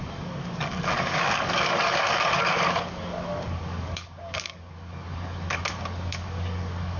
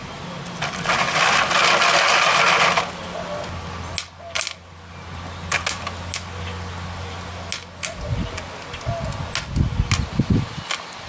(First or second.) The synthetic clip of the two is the first